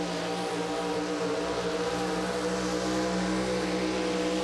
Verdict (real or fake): real